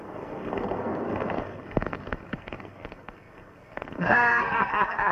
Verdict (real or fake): fake